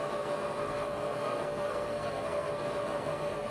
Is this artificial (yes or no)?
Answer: yes